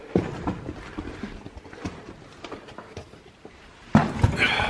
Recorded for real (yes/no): yes